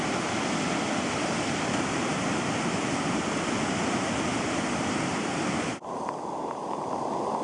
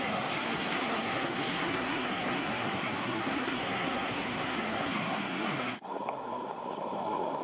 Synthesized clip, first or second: second